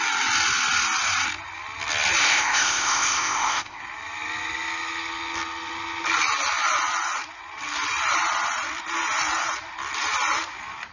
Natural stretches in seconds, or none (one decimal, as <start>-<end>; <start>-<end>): 0.0-2.2; 3.8-10.9